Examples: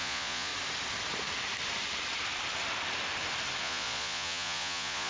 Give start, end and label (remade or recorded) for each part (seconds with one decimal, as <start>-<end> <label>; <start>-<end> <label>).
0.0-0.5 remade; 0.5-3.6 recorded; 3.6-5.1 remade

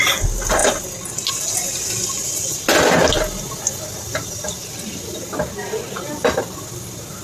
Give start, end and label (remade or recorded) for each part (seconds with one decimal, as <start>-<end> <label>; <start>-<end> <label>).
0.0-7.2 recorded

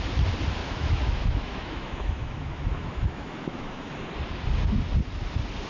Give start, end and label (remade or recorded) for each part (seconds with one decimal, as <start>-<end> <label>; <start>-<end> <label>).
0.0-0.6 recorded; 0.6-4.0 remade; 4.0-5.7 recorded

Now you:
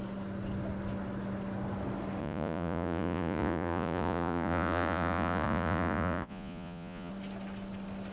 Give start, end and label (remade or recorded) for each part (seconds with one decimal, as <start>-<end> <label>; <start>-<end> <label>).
0.0-2.2 recorded; 2.2-7.1 remade; 7.1-8.1 recorded